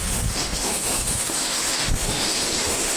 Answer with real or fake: fake